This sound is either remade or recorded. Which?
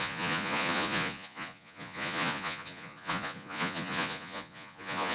remade